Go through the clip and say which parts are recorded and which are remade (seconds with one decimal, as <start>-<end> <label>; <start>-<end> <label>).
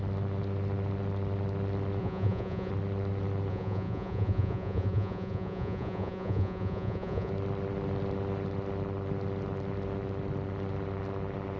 0.0-2.0 recorded; 2.0-2.7 remade; 2.7-3.5 recorded; 3.5-7.3 remade; 7.3-11.6 recorded